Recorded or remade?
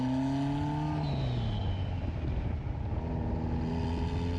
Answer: recorded